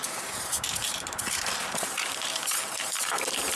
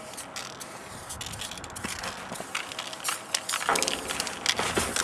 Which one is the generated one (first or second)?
first